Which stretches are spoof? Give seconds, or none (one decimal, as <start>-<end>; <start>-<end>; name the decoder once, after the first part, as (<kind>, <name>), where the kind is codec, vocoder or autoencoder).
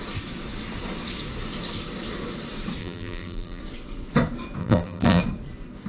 2.8-3.6 (vocoder, BigVGAN v2); 4.6-5.2